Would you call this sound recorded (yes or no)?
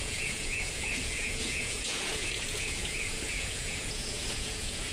no